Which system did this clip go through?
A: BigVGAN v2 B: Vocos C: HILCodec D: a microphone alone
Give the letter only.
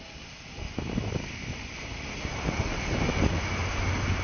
D